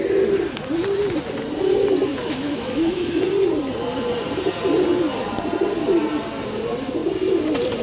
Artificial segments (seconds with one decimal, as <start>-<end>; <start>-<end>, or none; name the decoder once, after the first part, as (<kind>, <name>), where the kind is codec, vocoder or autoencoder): 2.1-3.2 (autoencoder, DAC-VAE)